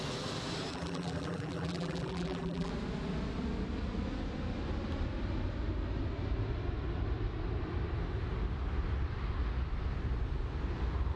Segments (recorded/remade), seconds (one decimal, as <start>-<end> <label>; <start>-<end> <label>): 0.0-0.7 recorded; 0.7-2.7 remade; 2.7-11.2 recorded